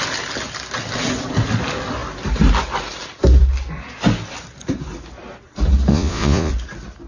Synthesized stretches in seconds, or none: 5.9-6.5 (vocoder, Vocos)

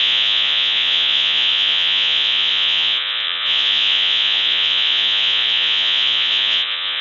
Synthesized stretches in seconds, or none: 0.0-7.0 (vocoder, Vocos)

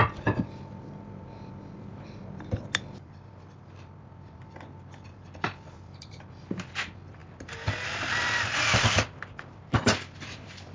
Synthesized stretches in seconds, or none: 0.0-10.7 (vocoder, BigVGAN v2)

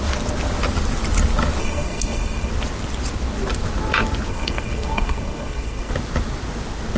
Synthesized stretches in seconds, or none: 1.6-2.5 (codec, SNAC); 4.3-5.9

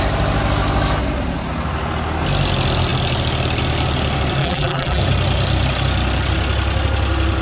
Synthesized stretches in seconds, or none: 4.4-5.0 (vocoder, BigVGAN v2)